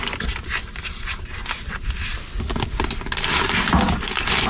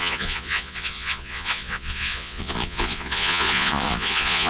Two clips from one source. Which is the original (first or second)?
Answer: first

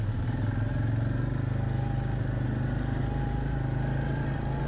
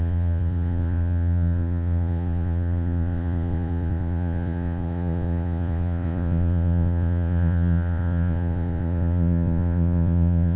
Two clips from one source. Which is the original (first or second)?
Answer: first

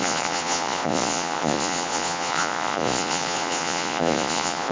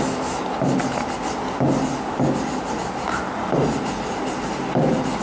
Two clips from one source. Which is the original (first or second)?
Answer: second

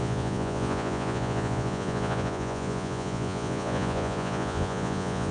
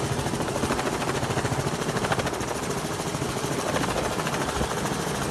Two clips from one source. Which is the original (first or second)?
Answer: second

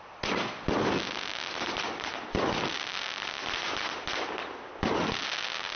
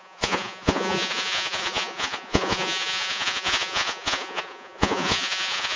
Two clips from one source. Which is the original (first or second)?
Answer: first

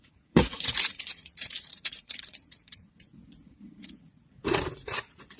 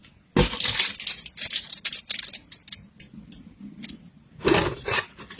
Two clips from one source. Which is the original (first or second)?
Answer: second